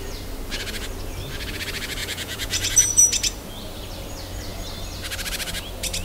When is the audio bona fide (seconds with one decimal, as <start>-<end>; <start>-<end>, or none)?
0.0-2.0; 3.0-6.0